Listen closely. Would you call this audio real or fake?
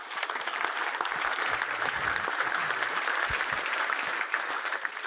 fake